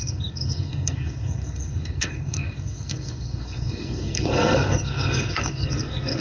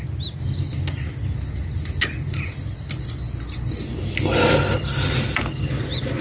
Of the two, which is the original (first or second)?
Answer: second